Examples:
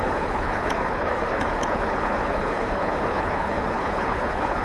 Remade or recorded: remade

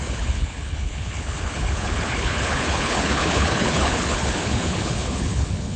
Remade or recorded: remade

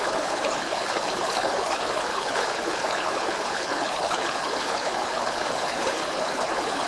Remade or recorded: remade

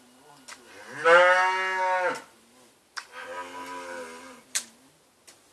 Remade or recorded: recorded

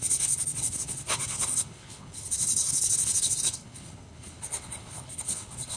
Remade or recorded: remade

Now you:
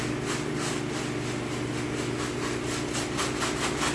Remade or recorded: recorded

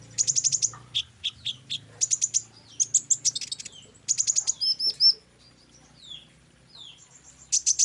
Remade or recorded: recorded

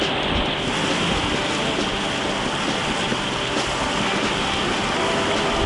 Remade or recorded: recorded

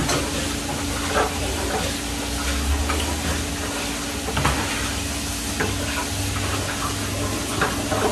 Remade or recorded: recorded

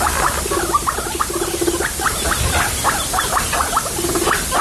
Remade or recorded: recorded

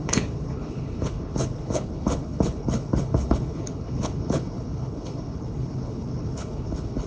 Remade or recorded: remade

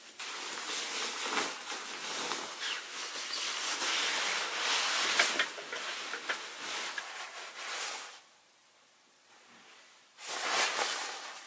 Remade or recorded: recorded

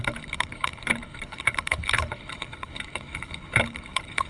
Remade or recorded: remade